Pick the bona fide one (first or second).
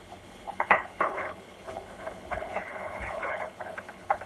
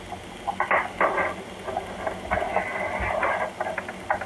second